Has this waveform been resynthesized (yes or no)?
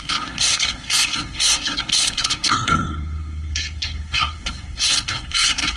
yes